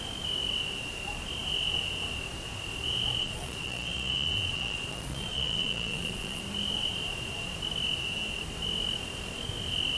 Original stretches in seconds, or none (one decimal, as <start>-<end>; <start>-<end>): 0.0-3.2; 6.4-10.0